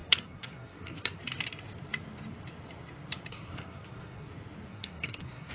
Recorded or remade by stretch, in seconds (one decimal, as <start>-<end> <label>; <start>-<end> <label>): 0.0-1.2 remade; 1.2-3.3 recorded; 3.3-4.3 remade; 4.3-4.7 recorded; 4.7-5.5 remade